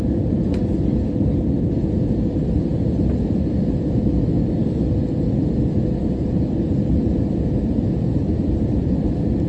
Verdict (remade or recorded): remade